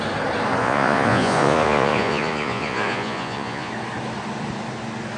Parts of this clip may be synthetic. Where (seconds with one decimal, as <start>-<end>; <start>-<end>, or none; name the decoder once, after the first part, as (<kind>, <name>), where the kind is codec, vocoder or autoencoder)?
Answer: 0.6-3.7 (vocoder, Vocos)